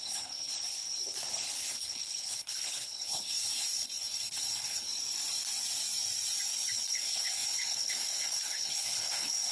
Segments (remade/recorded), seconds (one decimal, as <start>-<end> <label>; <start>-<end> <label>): 0.0-0.5 remade; 0.5-1.3 recorded; 1.3-4.9 remade; 4.9-6.9 recorded; 6.9-9.5 remade